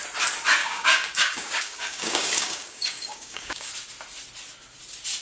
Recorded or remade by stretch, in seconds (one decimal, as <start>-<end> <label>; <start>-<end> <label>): 0.0-0.6 recorded; 0.6-3.7 remade; 3.7-5.2 recorded